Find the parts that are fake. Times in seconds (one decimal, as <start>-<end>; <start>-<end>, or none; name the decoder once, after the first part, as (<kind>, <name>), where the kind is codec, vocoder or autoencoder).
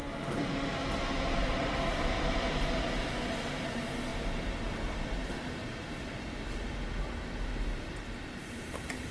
0.0-0.5 (vocoder, BigVGAN v2); 4.1-6.4